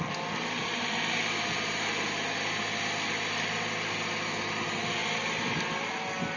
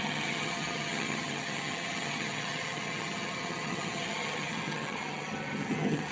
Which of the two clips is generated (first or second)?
second